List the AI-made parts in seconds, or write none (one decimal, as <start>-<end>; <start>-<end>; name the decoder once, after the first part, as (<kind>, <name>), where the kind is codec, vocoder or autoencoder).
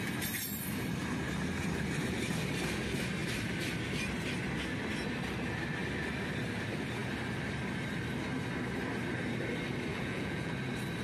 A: 9.9-10.5 (vocoder, Vocos)